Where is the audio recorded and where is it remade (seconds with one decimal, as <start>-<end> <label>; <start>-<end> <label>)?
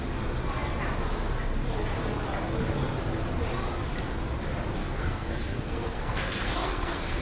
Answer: 0.0-4.8 recorded; 4.8-7.2 remade